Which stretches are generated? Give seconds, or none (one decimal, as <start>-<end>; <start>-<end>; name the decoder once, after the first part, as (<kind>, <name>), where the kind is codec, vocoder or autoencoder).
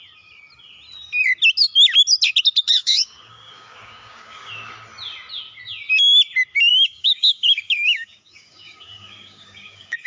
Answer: 2.8-4.5 (codec, DAC); 6.7-10.1